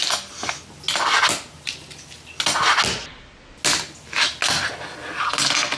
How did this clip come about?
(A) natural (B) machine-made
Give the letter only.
A